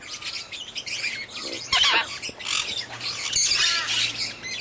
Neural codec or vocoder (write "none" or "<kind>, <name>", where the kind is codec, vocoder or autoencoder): none